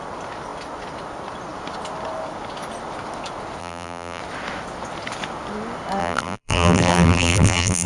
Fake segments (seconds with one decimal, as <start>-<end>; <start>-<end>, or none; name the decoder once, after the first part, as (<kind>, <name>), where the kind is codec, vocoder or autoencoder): 3.6-4.2 (vocoder, BigVGAN v2); 6.0-7.9